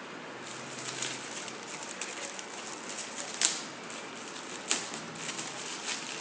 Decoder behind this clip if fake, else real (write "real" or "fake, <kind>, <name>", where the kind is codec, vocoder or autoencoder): real